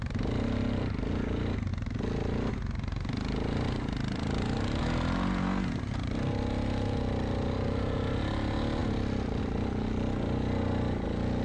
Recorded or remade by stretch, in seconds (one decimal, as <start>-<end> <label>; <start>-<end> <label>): 0.0-11.4 recorded